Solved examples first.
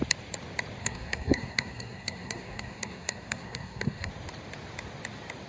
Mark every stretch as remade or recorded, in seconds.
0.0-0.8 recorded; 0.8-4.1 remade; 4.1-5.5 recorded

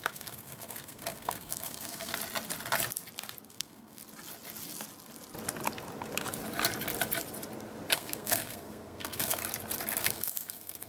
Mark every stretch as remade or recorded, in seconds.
0.0-2.1 remade; 2.1-3.5 recorded; 3.5-4.0 remade; 4.0-7.9 recorded; 7.9-9.4 remade; 9.4-10.0 recorded; 10.0-10.9 remade